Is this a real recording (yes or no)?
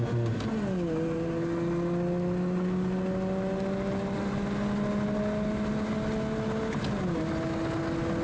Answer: yes